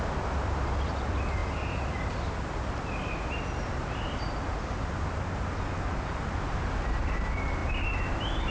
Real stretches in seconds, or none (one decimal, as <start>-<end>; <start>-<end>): 0.0-8.5